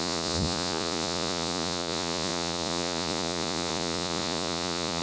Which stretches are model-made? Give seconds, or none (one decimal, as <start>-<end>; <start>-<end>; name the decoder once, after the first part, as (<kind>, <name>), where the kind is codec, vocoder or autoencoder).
0.0-5.0 (vocoder, Vocos)